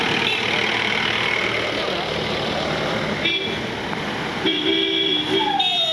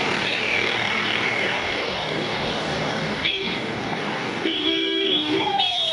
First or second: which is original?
first